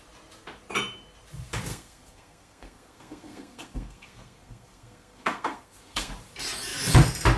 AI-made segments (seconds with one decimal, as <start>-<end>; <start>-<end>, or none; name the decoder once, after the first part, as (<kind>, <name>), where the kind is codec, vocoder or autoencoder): 1.7-6.1 (codec, SNAC)